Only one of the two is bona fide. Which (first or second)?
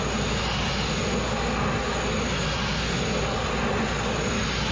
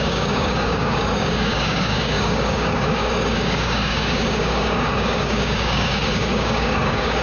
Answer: first